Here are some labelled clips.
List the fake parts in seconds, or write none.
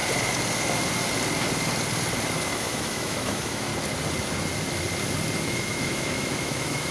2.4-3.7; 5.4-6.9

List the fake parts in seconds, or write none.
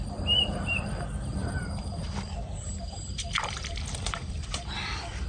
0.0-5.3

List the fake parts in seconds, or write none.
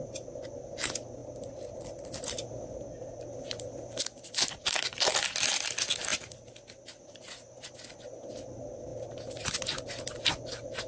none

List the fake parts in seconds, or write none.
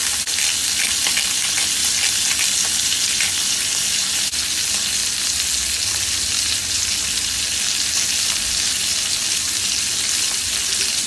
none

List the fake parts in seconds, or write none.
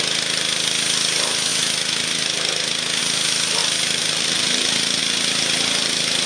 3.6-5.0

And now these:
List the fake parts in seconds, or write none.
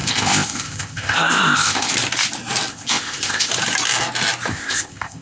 0.0-1.9; 2.7-3.5; 4.5-5.2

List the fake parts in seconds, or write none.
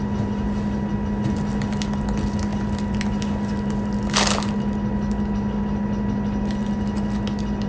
none